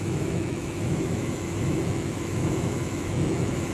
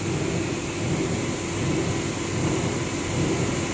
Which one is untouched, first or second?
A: second